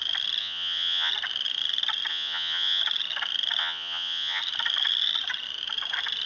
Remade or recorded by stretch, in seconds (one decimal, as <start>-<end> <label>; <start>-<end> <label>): 0.0-0.4 recorded; 0.4-1.1 remade; 1.1-2.1 recorded; 2.1-2.8 remade; 2.8-3.6 recorded; 3.6-4.4 remade; 4.4-6.3 recorded